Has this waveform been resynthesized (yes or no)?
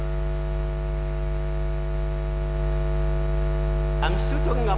no